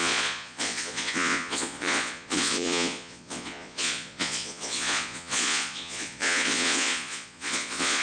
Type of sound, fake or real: fake